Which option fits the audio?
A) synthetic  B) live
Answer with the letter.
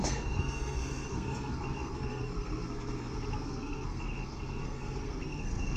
A